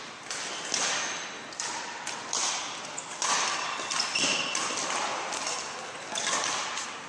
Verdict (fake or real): real